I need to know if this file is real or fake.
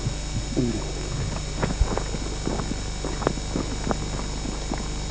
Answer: real